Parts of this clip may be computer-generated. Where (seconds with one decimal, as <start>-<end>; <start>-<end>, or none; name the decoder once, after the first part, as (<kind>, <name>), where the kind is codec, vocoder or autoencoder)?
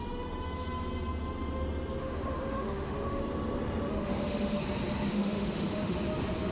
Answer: 2.0-3.2 (autoencoder, DAC-VAE); 3.9-4.6; 5.1-6.0